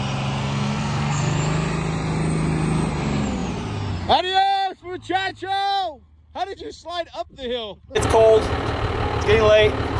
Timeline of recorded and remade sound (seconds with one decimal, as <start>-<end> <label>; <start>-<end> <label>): 0.0-0.4 recorded; 0.4-1.4 remade; 1.4-10.0 recorded